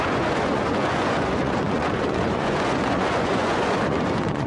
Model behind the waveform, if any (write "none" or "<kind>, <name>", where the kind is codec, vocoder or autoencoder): vocoder, Vocos